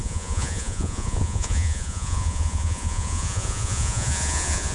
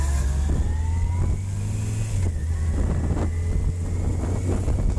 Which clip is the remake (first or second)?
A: first